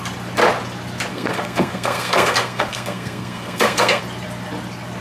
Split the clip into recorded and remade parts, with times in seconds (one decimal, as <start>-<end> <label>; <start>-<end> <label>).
0.0-1.1 recorded; 1.1-4.0 remade; 4.0-5.0 recorded